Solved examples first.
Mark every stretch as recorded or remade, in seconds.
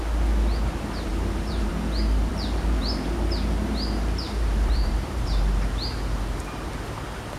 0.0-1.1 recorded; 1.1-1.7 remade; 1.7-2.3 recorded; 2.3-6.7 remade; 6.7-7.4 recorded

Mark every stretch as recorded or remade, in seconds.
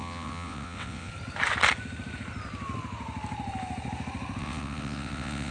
0.0-1.1 remade; 1.1-4.4 recorded; 4.4-5.5 remade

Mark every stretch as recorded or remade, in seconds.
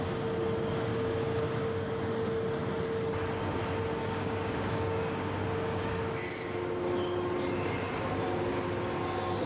0.0-0.9 recorded; 0.9-1.9 remade; 1.9-4.0 recorded; 4.0-5.8 remade; 5.8-9.5 recorded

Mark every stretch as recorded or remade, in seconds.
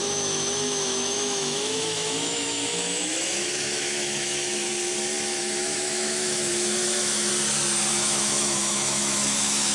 0.0-4.7 remade; 4.7-5.4 recorded; 5.4-7.3 remade; 7.3-7.9 recorded; 7.9-9.7 remade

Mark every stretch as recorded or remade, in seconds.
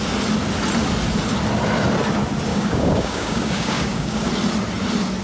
0.0-2.5 recorded; 2.5-4.3 remade; 4.3-5.2 recorded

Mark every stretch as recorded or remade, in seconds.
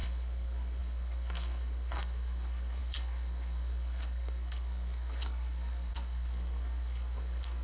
0.0-7.6 remade